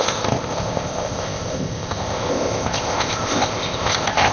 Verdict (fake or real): fake